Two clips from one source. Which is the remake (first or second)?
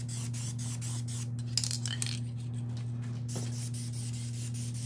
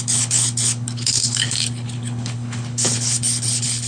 second